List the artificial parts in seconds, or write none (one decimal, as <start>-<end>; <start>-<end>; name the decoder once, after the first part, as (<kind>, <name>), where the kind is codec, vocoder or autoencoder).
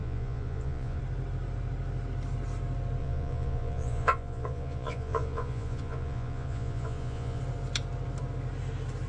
0.0-1.0 (vocoder, Vocos); 3.0-7.4